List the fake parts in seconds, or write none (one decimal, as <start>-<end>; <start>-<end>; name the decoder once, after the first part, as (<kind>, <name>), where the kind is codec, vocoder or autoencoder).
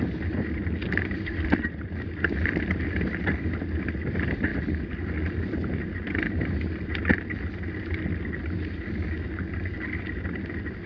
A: none